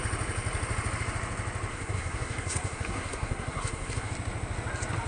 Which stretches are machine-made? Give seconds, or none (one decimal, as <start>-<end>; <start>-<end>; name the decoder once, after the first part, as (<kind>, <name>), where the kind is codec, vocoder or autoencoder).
1.7-4.1 (codec, SNAC)